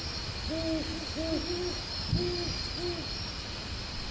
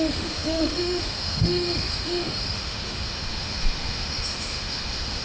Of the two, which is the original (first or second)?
first